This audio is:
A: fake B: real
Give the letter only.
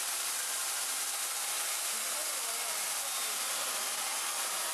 B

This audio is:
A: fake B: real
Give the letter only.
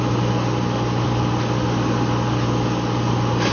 B